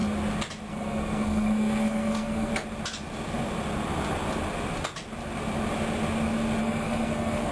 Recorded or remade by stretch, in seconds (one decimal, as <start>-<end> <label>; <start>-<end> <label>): 0.0-0.7 recorded; 0.7-2.5 remade; 2.5-6.6 recorded; 6.6-7.5 remade

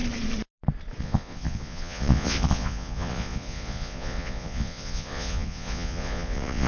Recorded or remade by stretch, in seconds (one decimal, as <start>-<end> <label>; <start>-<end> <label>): 0.0-1.0 recorded; 1.0-6.7 remade

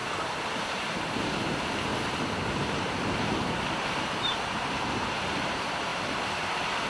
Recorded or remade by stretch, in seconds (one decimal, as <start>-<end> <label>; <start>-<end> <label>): 0.0-1.9 remade; 1.9-2.5 recorded; 2.5-6.9 remade

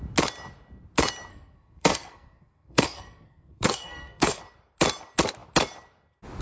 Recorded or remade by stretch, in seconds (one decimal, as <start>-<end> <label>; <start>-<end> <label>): 0.0-1.3 recorded; 1.3-4.4 remade; 4.4-6.4 recorded

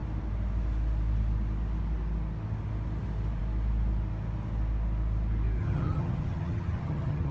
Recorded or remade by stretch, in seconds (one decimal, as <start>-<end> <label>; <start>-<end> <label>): 0.0-5.6 recorded; 5.6-7.3 remade

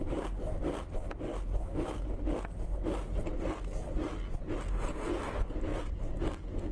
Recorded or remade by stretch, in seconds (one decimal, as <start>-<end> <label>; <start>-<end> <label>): 0.0-5.7 recorded; 5.7-6.2 remade; 6.2-6.7 recorded